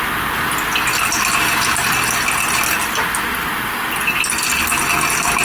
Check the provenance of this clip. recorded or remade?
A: recorded